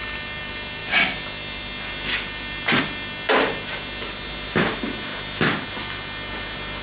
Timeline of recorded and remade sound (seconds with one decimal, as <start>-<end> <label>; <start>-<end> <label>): 0.0-6.8 recorded